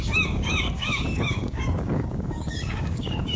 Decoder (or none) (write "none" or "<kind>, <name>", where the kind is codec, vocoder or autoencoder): codec, DAC